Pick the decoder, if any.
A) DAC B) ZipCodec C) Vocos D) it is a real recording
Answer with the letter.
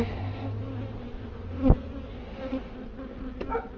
D